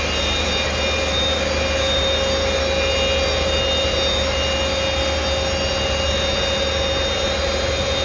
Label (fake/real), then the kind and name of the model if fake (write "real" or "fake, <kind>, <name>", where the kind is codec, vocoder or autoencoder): real